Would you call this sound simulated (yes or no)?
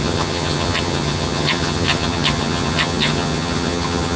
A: yes